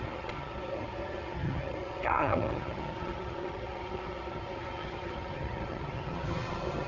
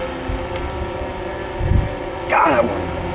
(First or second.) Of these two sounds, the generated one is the first